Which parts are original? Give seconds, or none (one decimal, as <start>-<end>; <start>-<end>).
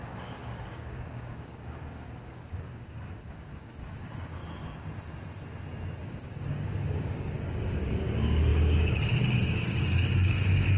4.4-6.0